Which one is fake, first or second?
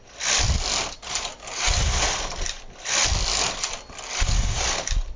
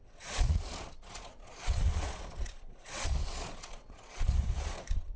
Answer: second